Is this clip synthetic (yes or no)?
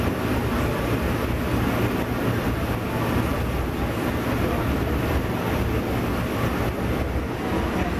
no